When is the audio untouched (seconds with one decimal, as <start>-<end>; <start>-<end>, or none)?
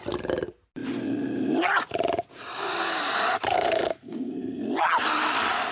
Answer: 0.0-3.5; 4.6-5.7